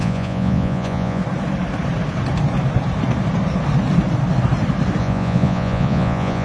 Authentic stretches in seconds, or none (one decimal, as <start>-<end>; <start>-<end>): 1.2-5.0